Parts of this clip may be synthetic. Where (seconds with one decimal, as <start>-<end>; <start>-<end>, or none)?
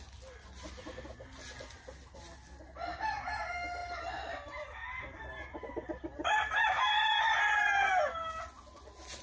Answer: none